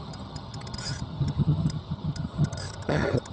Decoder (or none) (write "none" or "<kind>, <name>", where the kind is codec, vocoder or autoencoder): vocoder, HiFi-GAN